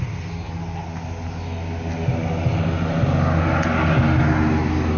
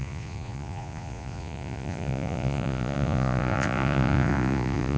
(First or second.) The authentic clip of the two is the first